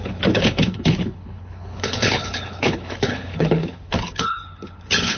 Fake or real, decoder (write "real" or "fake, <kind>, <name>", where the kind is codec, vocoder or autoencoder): fake, codec, HILCodec